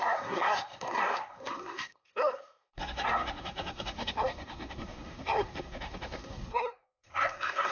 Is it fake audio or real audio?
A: fake